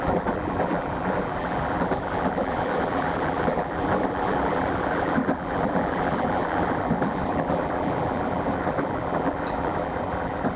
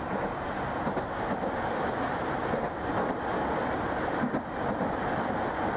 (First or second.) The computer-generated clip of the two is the first